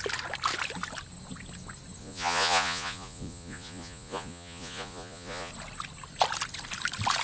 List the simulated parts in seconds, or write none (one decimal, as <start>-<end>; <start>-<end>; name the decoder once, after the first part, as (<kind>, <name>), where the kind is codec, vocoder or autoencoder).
2.0-5.5 (vocoder, Vocos)